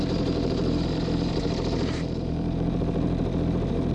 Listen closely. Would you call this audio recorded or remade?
remade